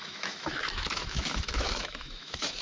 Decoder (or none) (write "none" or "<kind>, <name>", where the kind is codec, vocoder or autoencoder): autoencoder, DAC-VAE